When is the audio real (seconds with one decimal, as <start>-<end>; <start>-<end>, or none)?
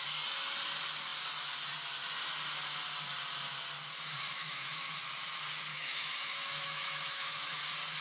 0.0-4.3; 5.0-5.7; 7.6-8.0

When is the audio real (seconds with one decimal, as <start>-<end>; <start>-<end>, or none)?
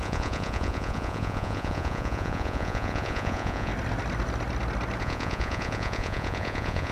3.7-5.0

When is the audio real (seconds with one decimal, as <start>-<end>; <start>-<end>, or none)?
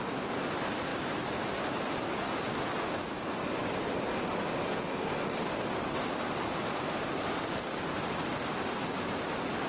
0.0-9.7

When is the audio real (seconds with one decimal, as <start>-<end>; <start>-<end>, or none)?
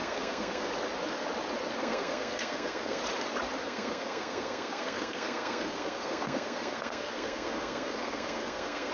0.7-1.7; 3.0-3.6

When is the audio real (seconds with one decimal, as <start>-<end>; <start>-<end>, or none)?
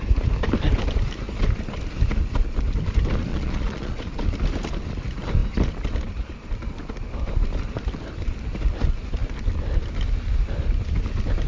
0.0-3.3; 4.1-11.5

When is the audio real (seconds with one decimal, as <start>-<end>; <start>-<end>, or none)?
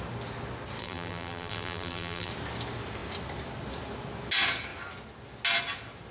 0.0-0.8; 2.3-6.1